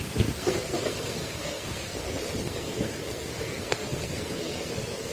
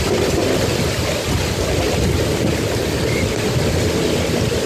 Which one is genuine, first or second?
second